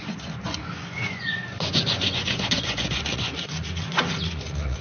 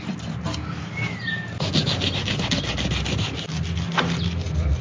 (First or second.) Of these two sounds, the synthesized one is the first